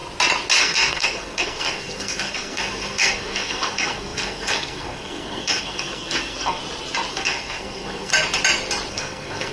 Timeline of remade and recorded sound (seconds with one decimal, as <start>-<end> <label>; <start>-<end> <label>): 0.0-0.6 recorded; 0.6-6.6 remade; 6.6-7.1 recorded; 7.1-8.1 remade; 8.1-8.9 recorded; 8.9-9.5 remade